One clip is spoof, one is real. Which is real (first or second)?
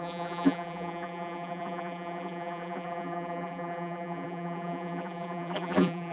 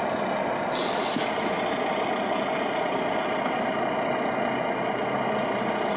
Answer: second